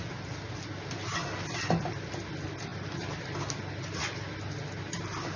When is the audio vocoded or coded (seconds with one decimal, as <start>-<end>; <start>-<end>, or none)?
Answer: none